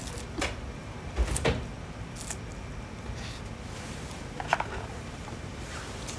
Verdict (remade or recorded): recorded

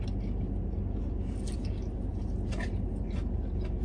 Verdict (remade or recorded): recorded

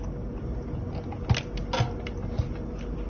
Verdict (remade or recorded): recorded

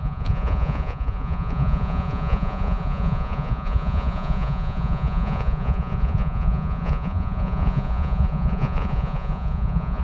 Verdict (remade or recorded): remade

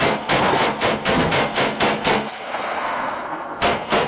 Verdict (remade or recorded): remade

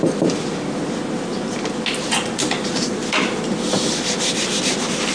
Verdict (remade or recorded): recorded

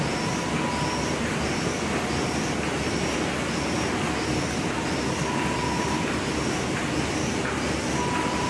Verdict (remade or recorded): recorded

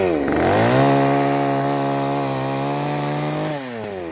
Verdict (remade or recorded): recorded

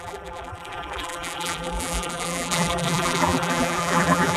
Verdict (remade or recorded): remade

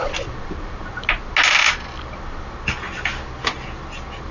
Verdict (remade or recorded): recorded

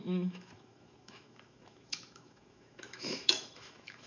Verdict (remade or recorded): remade